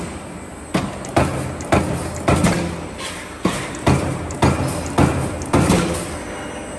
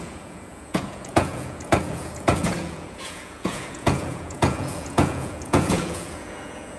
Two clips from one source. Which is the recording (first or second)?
first